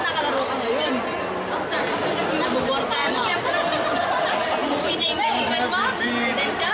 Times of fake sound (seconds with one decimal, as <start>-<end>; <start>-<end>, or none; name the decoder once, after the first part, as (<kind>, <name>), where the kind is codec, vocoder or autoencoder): 3.0-3.5 (vocoder, Vocos); 4.6-5.2